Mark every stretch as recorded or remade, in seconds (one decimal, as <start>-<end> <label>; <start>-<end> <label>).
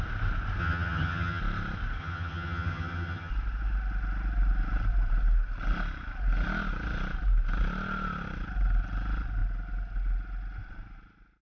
0.0-0.6 recorded; 0.6-1.4 remade; 1.4-2.0 recorded; 2.0-3.3 remade; 3.3-11.4 recorded